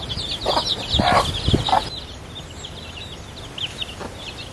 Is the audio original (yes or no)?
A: yes